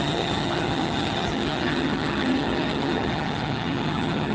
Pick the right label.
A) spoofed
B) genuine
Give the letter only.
A